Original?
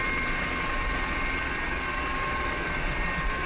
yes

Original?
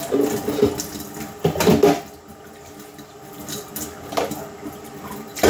yes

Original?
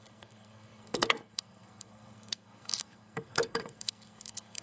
no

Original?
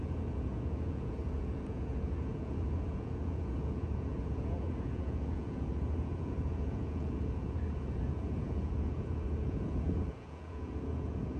no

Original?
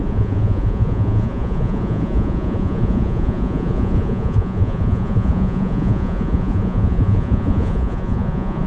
no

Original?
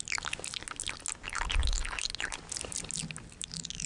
yes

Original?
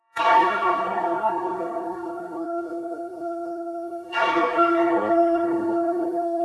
no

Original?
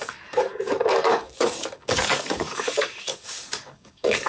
no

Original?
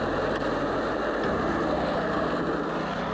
yes